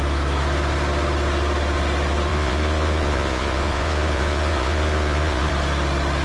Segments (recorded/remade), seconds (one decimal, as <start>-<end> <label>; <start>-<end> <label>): 0.0-2.3 recorded; 2.3-5.5 remade; 5.5-6.2 recorded